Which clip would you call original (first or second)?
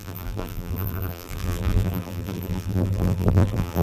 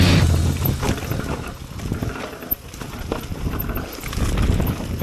second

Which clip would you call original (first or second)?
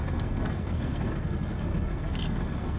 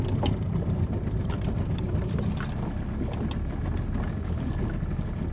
second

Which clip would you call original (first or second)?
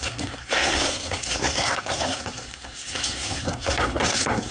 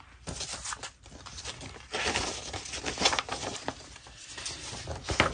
second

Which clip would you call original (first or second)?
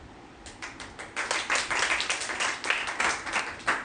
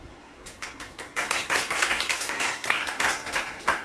first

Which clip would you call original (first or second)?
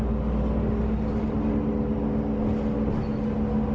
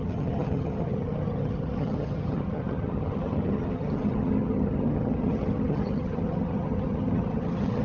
first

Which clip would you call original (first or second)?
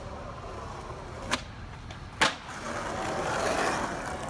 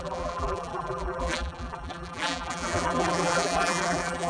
first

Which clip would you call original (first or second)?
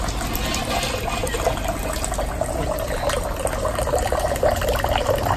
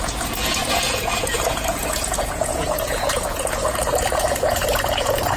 first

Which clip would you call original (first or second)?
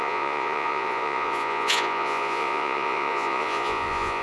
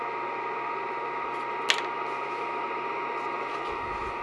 second